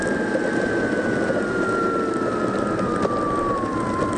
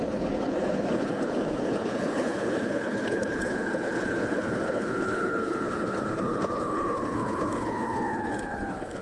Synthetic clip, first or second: second